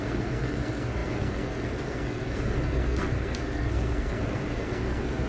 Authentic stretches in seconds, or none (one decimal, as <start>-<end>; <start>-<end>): none